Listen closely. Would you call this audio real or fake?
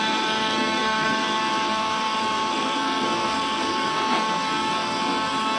fake